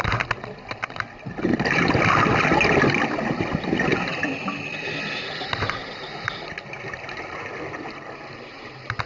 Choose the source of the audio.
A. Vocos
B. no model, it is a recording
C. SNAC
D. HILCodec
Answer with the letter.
B